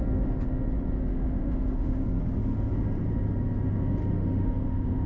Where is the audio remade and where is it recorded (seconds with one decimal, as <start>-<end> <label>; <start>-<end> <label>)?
0.0-1.1 recorded; 1.1-2.0 remade; 2.0-4.0 recorded; 4.0-5.1 remade